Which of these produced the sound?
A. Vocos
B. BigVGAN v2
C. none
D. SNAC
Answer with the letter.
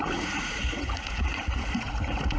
A